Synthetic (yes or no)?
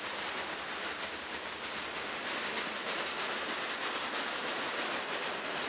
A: no